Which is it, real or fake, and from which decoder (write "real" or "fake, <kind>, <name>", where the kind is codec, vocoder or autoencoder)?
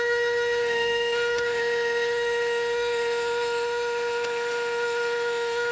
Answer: fake, autoencoder, DAC-VAE